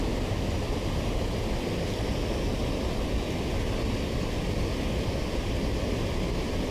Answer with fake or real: real